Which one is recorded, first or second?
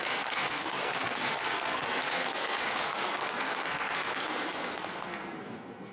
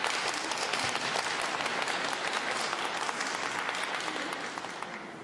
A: second